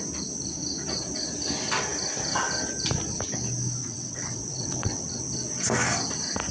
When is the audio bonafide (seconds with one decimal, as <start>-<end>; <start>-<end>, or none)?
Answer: 0.0-3.8; 5.2-6.5